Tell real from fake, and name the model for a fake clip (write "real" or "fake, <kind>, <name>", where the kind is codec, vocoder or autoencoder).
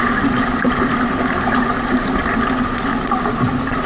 real